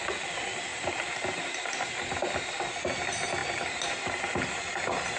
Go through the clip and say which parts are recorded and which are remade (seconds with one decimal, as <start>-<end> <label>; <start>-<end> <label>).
0.0-0.7 recorded; 0.7-2.1 remade; 2.1-3.4 recorded; 3.4-4.1 remade; 4.1-5.2 recorded